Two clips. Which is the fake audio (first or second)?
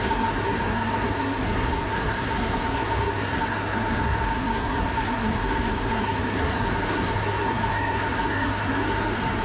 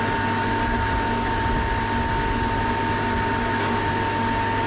first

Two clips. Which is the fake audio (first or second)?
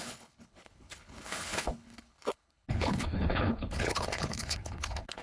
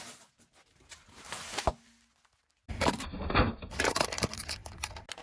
first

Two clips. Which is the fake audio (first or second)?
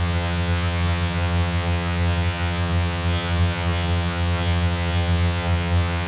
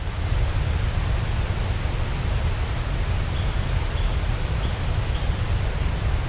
first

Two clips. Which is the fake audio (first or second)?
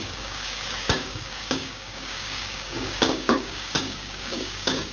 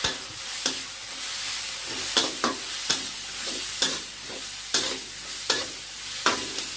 first